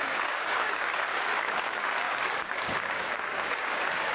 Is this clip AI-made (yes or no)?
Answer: yes